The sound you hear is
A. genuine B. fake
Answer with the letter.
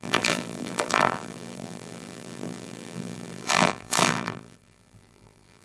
B